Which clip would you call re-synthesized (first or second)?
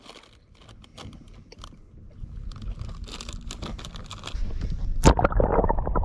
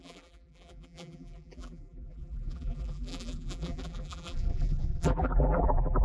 second